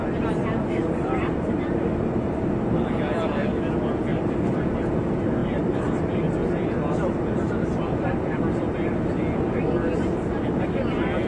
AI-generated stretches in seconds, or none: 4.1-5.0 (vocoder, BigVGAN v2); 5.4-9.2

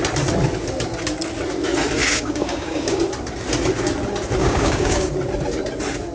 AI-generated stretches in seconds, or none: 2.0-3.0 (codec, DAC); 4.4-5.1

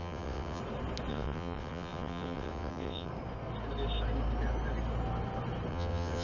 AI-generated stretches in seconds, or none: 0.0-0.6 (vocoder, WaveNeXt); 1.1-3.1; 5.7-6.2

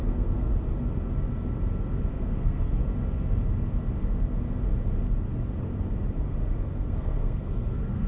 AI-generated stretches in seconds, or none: 0.0-0.5 (codec, SNAC); 2.1-2.8; 6.8-8.1

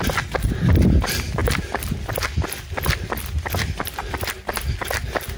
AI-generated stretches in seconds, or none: none